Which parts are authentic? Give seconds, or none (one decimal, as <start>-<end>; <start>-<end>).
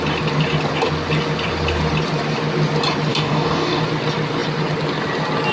0.0-3.1; 3.8-5.5